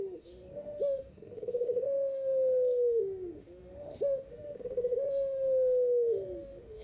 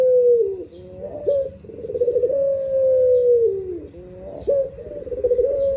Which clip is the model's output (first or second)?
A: first